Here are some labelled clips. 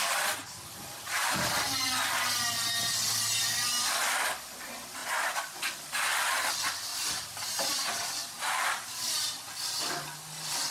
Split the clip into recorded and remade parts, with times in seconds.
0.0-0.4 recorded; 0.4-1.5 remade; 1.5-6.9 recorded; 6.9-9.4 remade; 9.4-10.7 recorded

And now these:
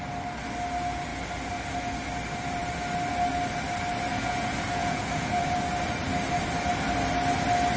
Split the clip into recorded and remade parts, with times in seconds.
0.0-4.1 recorded; 4.1-5.6 remade; 5.6-7.8 recorded